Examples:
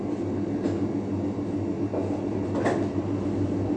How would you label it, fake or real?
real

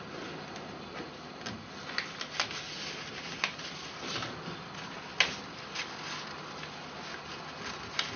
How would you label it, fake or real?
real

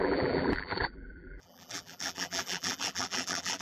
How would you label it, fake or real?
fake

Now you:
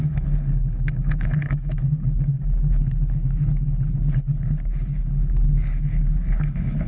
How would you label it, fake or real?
fake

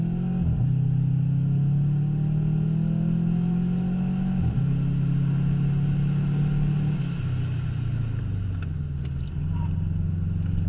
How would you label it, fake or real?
real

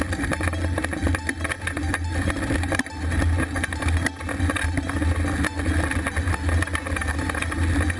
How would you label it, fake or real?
real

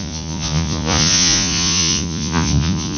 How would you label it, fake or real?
fake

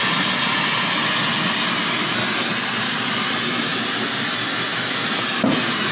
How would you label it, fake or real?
real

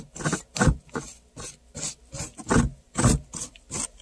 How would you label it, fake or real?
real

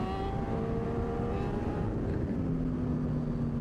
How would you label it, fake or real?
real